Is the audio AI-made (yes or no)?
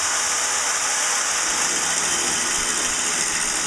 no